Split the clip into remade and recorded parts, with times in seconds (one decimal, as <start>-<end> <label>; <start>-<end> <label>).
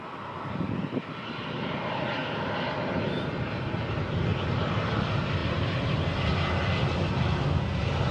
0.0-8.1 recorded